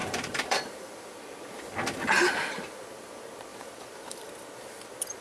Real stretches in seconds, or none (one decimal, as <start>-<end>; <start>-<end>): 0.9-3.5; 4.3-5.2